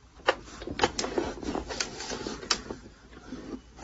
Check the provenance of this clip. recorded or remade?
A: recorded